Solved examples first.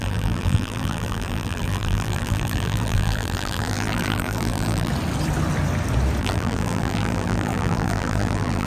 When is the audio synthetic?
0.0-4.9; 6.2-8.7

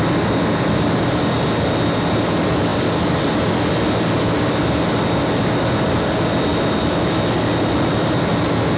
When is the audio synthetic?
none